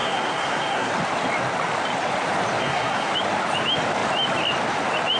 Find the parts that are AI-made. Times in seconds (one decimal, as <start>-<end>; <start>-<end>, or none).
0.0-0.9; 2.6-3.1